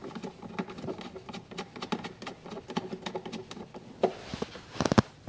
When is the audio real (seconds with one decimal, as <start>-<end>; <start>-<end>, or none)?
0.0-5.3